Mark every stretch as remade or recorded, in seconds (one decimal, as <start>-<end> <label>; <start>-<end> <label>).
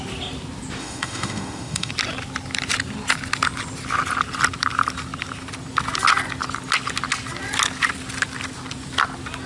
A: 0.0-0.8 recorded; 0.8-1.9 remade; 1.9-9.5 recorded